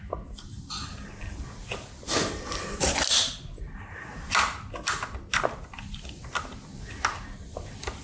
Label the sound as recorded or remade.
recorded